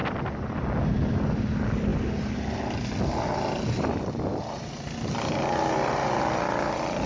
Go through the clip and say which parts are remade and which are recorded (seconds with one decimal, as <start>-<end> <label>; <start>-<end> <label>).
0.0-7.1 recorded